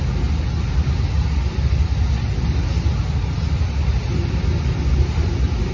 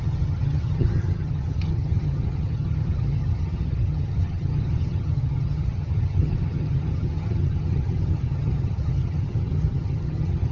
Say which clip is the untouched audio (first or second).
first